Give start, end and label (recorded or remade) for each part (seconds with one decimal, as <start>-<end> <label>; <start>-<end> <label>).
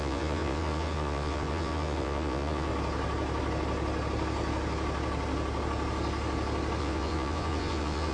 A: 0.0-2.7 remade; 2.7-6.8 recorded; 6.8-8.1 remade